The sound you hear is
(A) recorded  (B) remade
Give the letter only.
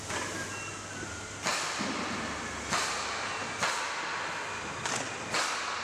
A